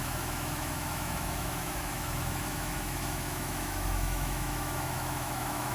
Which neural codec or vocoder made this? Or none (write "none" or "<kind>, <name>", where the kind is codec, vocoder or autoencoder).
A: autoencoder, DAC-VAE